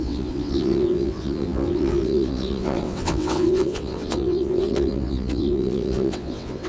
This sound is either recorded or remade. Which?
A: remade